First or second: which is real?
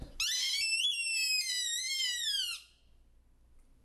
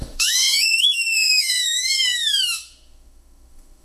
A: first